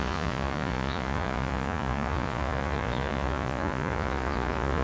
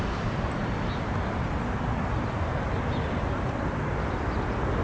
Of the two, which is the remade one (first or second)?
first